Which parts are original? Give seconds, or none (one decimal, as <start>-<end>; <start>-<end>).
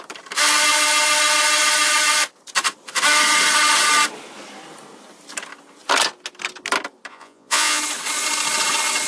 0.0-7.1; 7.8-9.1